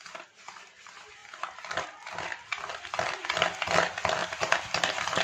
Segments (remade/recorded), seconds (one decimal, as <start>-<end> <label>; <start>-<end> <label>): 0.0-5.2 recorded